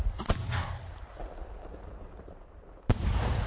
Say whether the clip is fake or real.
real